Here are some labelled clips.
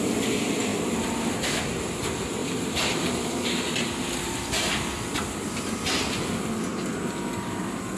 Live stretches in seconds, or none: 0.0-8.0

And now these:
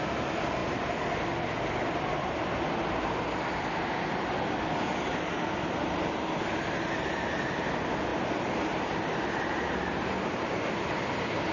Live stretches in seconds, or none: 0.0-11.5

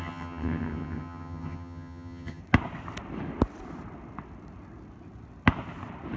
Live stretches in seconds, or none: 2.4-6.2

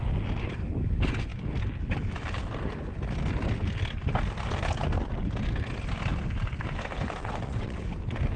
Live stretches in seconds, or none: 0.0-7.2; 7.8-8.4

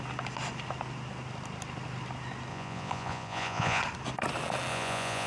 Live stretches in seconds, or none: 0.0-2.5; 3.8-4.7

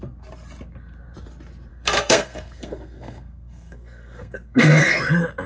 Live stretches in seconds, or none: 0.0-1.7; 5.0-5.5

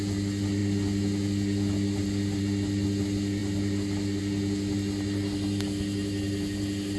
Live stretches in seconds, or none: 0.0-7.0